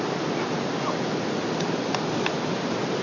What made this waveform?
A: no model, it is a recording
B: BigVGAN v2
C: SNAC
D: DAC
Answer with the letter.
A